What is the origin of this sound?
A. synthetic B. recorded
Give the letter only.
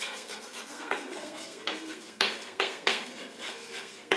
A